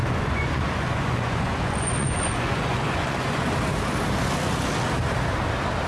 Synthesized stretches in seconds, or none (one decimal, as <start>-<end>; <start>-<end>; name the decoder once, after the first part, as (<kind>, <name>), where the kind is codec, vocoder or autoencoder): 0.0-3.5 (vocoder, Vocos)